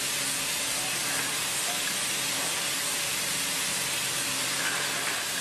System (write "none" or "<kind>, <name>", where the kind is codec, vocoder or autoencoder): vocoder, BigVGAN v2